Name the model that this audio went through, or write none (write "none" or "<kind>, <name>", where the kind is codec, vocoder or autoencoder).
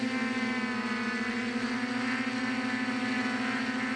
none